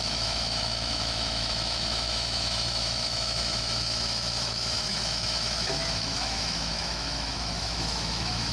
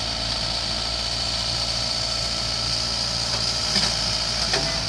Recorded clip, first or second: second